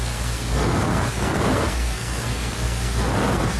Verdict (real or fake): fake